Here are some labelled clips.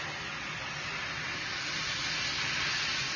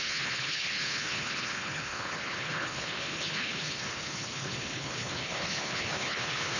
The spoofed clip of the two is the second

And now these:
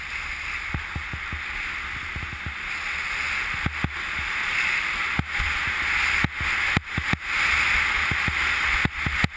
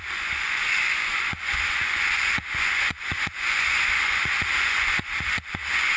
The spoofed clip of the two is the second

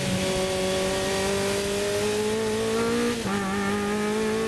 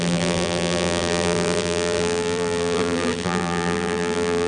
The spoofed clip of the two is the second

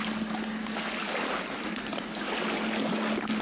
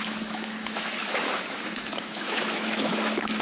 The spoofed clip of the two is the second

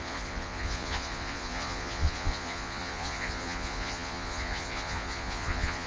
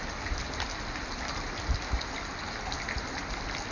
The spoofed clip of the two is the first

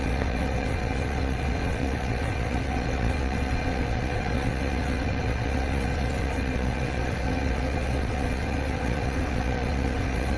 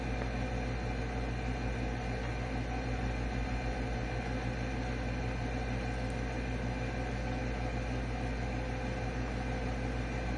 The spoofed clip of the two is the first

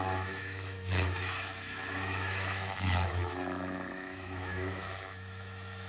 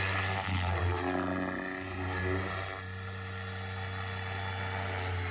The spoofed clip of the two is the first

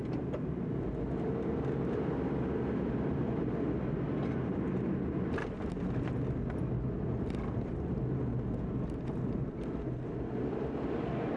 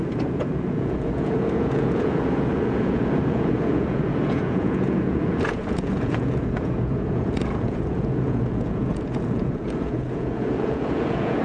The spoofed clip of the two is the second